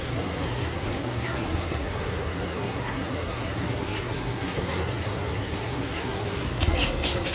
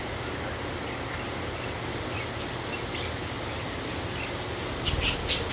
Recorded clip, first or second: second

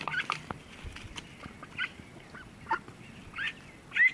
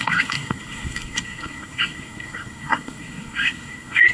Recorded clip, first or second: first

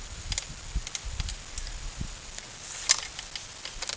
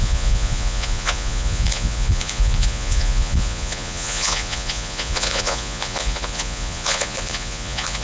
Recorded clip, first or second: first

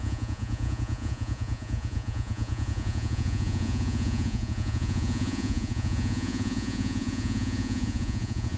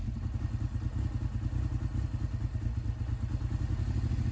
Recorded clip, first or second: second